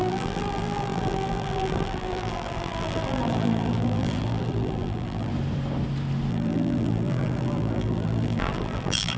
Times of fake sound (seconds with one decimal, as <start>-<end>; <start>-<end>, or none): 0.0-5.3; 6.3-9.2

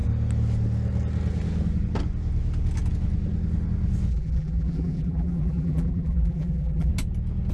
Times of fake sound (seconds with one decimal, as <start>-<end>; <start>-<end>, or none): 4.1-6.9

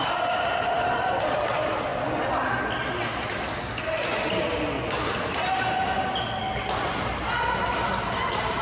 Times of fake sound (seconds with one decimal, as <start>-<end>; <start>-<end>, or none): none

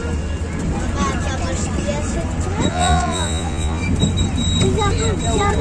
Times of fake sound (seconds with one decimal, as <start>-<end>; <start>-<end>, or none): 2.7-3.8

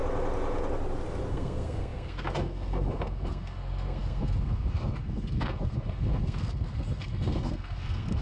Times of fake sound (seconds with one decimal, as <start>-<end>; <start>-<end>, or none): 1.3-8.2

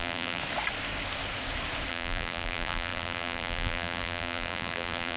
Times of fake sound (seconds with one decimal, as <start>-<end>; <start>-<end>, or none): 0.0-0.4; 1.9-5.2

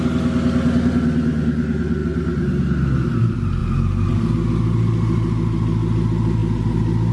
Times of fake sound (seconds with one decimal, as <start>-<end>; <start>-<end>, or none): none

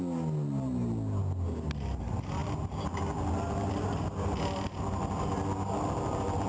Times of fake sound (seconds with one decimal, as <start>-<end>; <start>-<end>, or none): none